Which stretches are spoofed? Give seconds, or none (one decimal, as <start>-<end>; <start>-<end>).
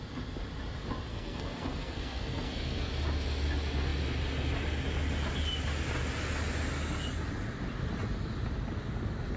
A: 1.1-2.9